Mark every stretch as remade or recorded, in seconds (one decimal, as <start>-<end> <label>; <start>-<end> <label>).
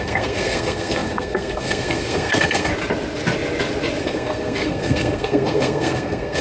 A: 0.0-2.7 remade; 2.7-4.0 recorded; 4.0-6.4 remade